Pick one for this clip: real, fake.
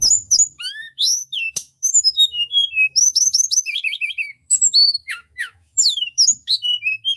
fake